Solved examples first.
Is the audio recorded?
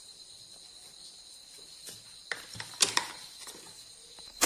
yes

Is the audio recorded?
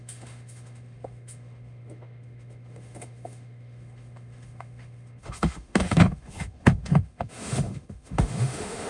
no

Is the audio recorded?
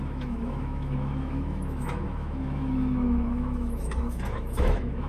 no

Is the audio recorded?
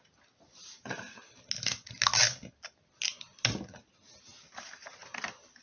yes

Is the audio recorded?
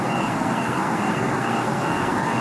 no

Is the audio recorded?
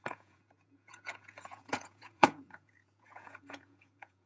no